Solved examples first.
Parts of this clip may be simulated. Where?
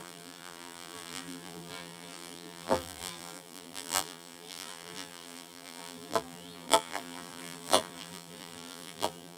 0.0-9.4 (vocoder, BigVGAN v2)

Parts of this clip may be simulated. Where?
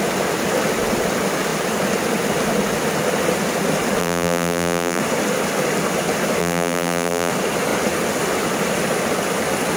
4.0-5.0 (vocoder, BigVGAN v2); 6.4-7.3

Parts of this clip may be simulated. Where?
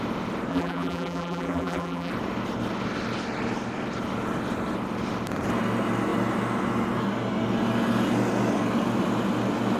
0.5-2.1 (vocoder, BigVGAN v2)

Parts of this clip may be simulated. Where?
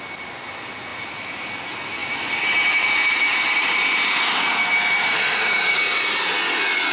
0.9-1.5 (vocoder, BigVGAN v2); 2.0-5.7